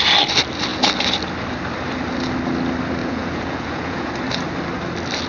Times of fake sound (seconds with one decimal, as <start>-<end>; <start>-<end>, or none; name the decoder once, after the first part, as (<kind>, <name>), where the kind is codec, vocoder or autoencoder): 3.0-4.1 (vocoder, Vocos)